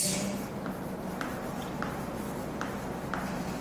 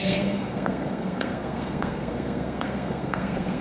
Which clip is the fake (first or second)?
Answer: second